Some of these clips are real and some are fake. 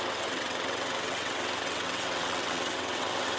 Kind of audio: fake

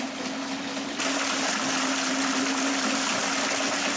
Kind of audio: real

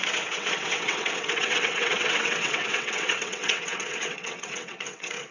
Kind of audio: fake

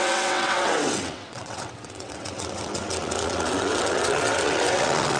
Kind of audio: fake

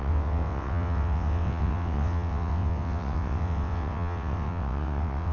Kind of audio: fake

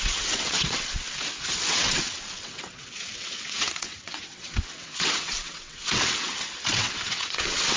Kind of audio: fake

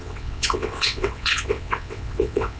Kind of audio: fake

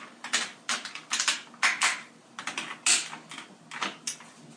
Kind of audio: real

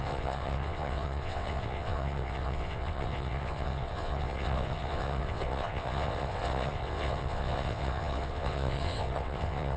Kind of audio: fake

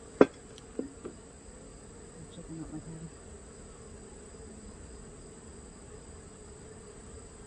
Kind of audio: real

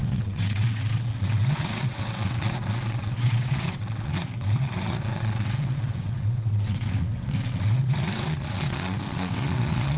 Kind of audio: fake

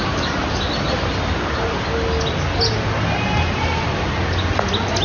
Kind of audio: real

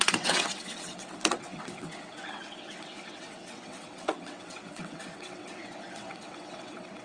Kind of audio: fake